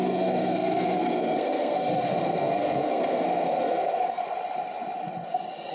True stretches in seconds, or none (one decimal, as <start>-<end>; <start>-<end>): 4.2-5.7